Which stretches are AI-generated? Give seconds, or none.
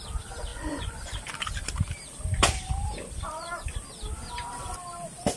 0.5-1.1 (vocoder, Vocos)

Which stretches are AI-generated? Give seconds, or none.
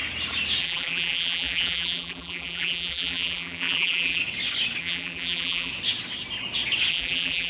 0.6-4.2 (vocoder, BigVGAN v2); 4.8-5.7; 6.9-7.5